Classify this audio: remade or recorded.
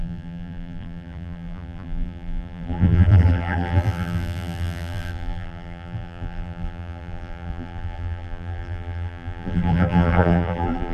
remade